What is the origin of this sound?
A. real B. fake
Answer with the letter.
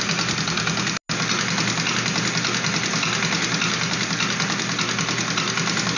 A